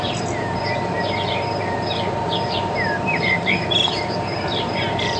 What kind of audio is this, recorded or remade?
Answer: remade